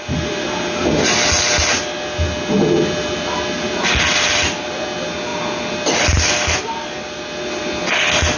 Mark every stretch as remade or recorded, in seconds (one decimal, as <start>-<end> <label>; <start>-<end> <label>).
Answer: 0.0-8.4 recorded